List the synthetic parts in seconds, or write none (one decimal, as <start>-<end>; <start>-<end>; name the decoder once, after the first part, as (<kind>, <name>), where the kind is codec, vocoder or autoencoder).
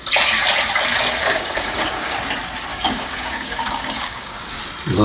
1.2-2.2 (codec, DAC); 2.7-4.6